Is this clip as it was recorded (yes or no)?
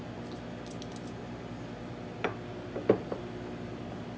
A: yes